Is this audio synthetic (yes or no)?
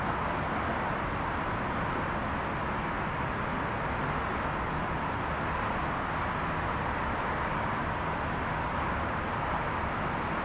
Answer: no